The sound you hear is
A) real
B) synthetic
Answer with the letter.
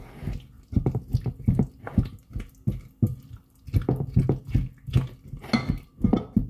A